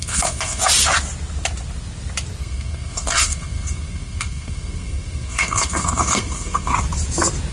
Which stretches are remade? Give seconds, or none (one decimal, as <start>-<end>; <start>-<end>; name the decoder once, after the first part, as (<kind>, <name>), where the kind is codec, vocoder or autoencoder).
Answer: 0.0-0.6 (codec, SNAC); 2.4-6.7